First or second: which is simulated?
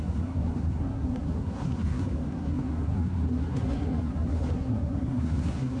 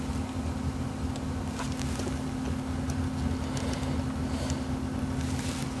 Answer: first